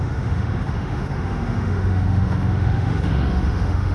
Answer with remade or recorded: remade